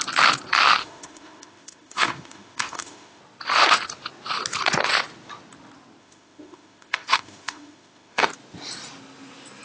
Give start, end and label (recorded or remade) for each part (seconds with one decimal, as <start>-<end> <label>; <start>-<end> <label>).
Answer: 0.0-0.8 recorded; 0.8-3.2 remade; 3.2-6.0 recorded; 6.0-8.3 remade; 8.3-9.6 recorded